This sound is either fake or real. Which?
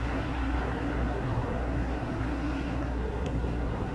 fake